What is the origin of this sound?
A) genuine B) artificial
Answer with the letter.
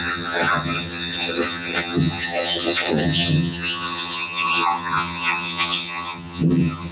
B